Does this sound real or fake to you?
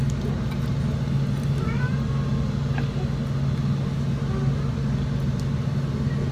real